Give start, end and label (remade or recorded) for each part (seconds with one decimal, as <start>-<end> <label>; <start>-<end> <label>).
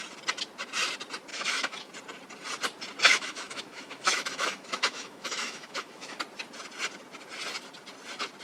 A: 0.0-1.3 recorded; 1.3-1.9 remade; 1.9-3.1 recorded; 3.1-6.2 remade; 6.2-8.4 recorded